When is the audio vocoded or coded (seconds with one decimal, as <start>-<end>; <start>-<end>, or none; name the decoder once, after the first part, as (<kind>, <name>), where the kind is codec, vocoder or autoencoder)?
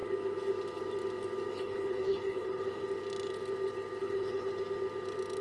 1.5-2.8 (codec, HILCodec); 4.0-4.5